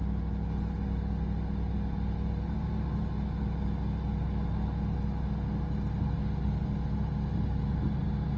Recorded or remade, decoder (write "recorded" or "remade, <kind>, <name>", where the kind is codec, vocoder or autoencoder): recorded